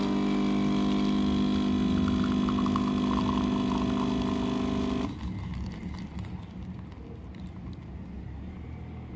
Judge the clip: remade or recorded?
recorded